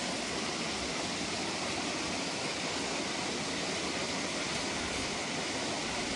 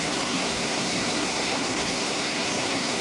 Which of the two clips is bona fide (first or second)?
first